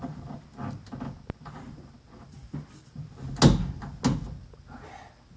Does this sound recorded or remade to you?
recorded